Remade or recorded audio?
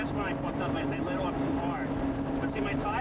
recorded